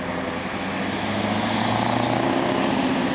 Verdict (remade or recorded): recorded